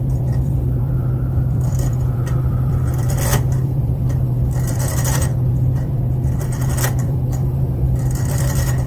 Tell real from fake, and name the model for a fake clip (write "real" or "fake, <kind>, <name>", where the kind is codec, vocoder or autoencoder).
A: fake, vocoder, BigVGAN v2